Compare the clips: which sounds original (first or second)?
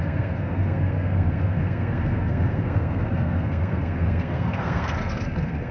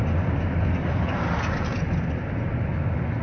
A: second